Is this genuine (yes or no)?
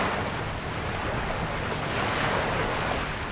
yes